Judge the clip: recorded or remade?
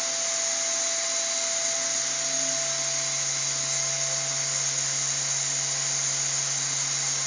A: recorded